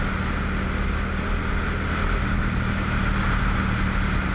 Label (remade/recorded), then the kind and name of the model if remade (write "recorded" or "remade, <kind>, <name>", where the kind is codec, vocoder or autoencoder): recorded